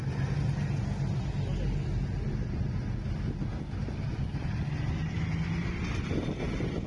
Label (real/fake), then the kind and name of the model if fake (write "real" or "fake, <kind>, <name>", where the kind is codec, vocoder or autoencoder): real